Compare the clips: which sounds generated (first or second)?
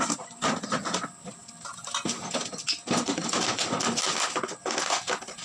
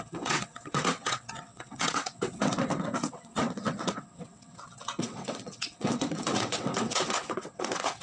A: second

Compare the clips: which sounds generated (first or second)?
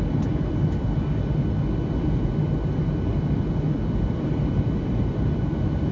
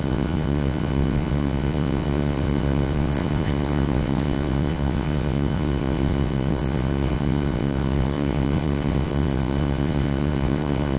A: second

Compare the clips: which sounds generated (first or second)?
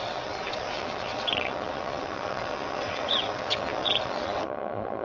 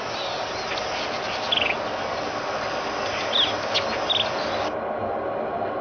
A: first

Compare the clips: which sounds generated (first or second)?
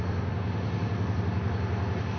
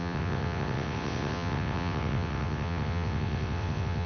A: second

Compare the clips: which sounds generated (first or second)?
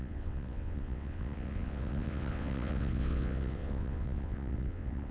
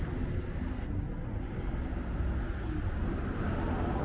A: first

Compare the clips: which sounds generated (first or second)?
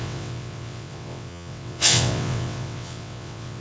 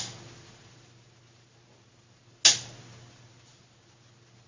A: first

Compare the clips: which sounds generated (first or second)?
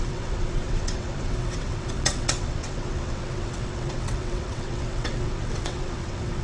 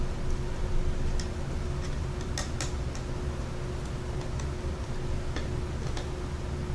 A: first